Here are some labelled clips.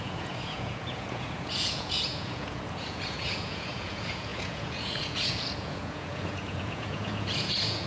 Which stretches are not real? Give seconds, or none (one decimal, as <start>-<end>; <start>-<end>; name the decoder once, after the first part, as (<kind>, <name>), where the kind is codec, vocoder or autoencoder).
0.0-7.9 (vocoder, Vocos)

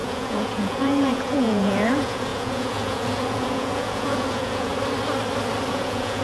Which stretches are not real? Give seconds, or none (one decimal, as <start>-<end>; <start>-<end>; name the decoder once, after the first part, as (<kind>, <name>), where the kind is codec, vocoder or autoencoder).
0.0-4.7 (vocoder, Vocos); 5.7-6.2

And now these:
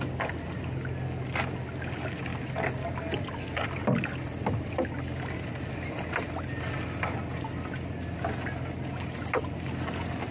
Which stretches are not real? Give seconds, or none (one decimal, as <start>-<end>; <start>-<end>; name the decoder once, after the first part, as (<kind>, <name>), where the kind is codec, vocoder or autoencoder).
none

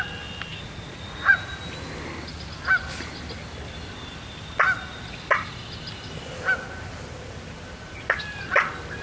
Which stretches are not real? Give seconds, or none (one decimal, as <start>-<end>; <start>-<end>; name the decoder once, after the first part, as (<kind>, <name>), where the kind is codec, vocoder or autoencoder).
0.5-1.6 (vocoder, Vocos)